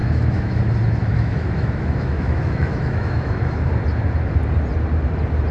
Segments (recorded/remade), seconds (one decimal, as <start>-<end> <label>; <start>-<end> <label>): 0.0-0.6 remade; 0.6-1.0 recorded; 1.0-3.7 remade; 3.7-5.5 recorded